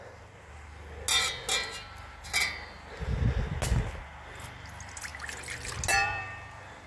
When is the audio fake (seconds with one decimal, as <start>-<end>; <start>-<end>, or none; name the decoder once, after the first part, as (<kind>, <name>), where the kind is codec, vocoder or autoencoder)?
none